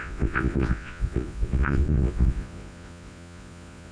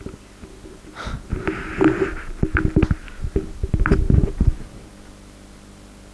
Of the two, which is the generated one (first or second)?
first